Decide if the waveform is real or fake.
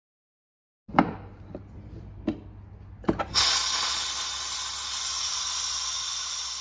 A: real